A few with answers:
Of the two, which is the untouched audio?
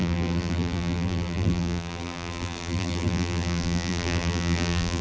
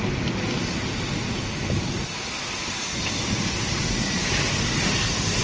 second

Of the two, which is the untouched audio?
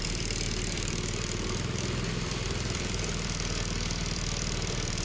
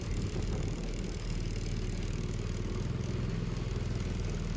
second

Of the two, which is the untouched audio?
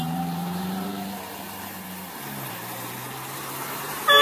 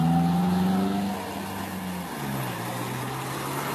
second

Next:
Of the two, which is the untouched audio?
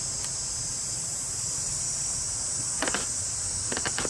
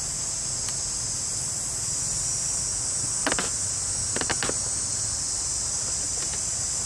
second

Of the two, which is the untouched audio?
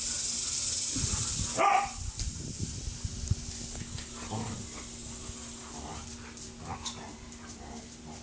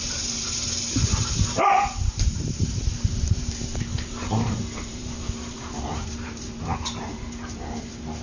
first